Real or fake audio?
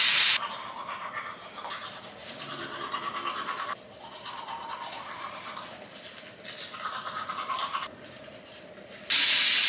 fake